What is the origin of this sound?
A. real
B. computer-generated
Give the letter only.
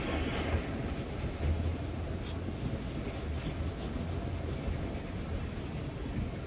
A